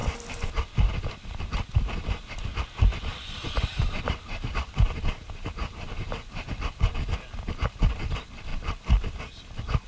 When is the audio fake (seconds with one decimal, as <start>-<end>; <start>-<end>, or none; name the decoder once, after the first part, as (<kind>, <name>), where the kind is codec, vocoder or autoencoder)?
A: 3.1-6.9 (vocoder, BigVGAN v2)